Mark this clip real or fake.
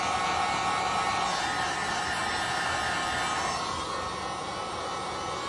real